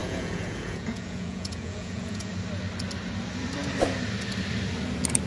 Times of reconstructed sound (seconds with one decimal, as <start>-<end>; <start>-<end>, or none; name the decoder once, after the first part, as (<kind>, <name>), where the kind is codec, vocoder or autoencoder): 0.0-2.3 (vocoder, Vocos)